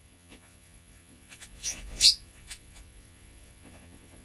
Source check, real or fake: fake